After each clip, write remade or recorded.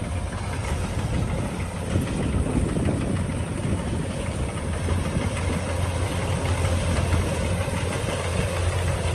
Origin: recorded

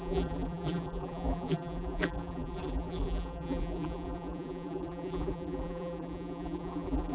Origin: remade